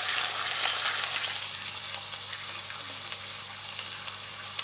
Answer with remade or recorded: recorded